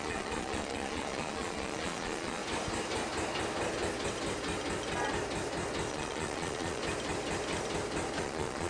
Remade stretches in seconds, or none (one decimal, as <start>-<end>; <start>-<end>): 0.0-2.4; 5.9-6.8; 8.2-8.7